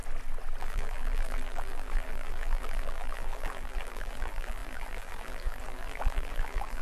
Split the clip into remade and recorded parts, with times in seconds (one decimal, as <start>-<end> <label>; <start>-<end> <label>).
0.0-0.6 recorded; 0.6-6.8 remade

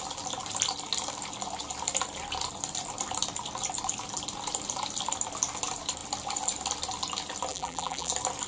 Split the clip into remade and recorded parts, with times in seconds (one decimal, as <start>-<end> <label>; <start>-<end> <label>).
0.0-7.5 recorded; 7.5-8.1 remade; 8.1-8.5 recorded

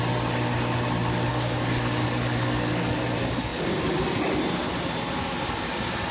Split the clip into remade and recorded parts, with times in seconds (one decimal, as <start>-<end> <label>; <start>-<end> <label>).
0.0-1.3 recorded; 1.3-3.0 remade; 3.0-6.1 recorded

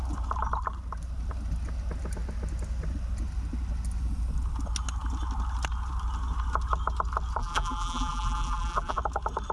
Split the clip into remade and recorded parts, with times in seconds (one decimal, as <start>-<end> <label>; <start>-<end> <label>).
0.0-7.4 recorded; 7.4-9.0 remade; 9.0-9.5 recorded

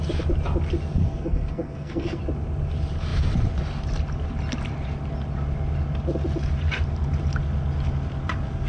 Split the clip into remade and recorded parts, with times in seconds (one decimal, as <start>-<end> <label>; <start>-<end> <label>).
0.0-1.0 recorded; 1.0-2.2 remade; 2.2-8.7 recorded

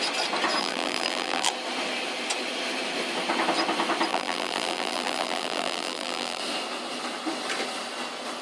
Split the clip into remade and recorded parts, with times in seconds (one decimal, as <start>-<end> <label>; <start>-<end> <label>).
0.0-0.6 recorded; 0.6-1.5 remade; 1.5-4.1 recorded; 4.1-6.4 remade; 6.4-8.4 recorded

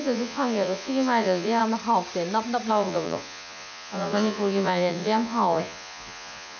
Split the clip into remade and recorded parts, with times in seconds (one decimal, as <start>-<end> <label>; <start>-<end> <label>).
0.0-1.6 remade; 1.6-2.7 recorded; 2.7-6.6 remade